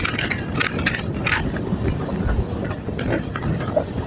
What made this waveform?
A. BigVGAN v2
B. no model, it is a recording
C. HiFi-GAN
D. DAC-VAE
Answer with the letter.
B